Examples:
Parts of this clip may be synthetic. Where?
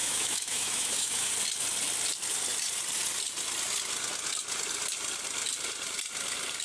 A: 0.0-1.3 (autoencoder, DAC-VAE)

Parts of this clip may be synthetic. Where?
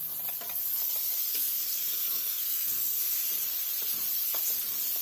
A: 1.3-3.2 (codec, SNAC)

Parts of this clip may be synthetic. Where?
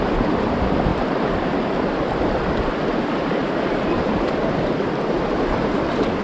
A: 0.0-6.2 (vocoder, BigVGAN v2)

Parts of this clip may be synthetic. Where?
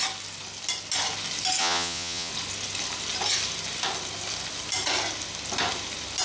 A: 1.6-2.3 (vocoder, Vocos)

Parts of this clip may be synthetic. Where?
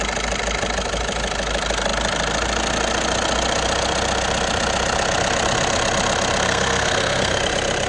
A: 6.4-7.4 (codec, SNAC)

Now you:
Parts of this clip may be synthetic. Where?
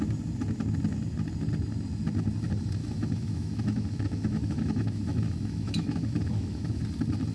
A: 2.8-6.8 (autoencoder, DAC-VAE)